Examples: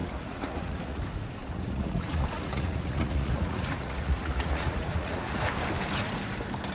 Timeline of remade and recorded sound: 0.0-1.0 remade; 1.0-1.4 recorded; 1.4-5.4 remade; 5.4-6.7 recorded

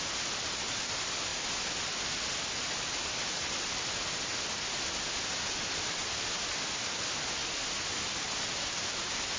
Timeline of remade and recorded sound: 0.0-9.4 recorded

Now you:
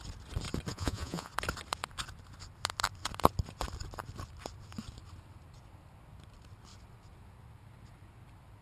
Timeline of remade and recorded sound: 0.0-0.7 recorded; 0.7-1.3 remade; 1.3-8.6 recorded